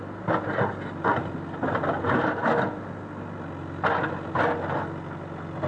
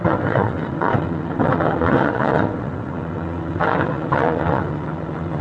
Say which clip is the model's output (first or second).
second